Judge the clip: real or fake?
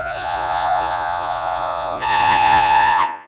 fake